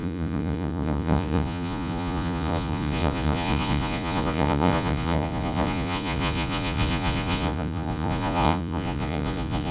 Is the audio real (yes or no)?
no